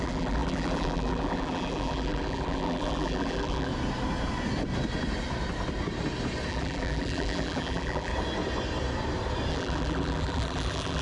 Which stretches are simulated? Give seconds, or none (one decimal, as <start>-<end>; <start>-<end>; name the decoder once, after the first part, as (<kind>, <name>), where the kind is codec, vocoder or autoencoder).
0.0-3.7 (vocoder, BigVGAN v2); 6.5-8.1; 9.5-11.0